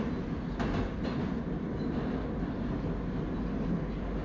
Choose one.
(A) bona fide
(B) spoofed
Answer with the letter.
A